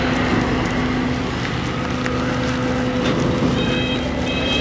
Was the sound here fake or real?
real